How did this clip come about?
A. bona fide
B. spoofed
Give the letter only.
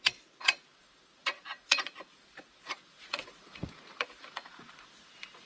B